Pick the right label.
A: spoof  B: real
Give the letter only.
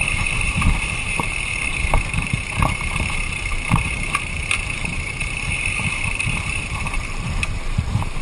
A